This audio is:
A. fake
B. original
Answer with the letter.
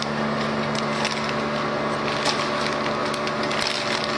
B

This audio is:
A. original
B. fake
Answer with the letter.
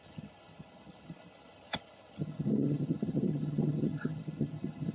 B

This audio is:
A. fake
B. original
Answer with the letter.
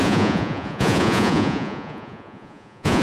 A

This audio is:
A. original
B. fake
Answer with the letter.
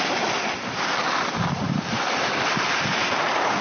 A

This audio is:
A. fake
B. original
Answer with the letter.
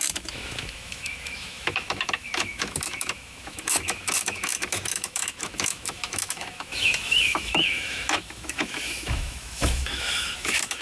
A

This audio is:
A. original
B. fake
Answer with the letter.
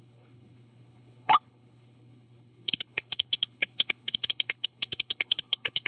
B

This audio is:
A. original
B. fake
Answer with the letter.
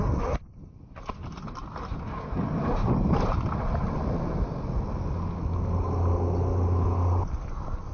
A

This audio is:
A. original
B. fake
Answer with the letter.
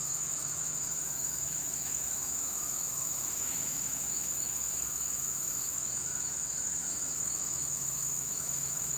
B